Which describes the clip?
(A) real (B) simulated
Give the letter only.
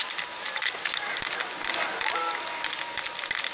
A